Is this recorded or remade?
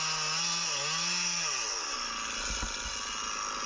recorded